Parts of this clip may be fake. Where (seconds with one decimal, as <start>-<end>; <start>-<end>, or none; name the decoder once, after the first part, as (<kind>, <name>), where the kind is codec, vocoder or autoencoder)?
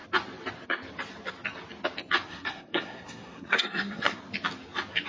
2.3-4.2 (codec, SNAC)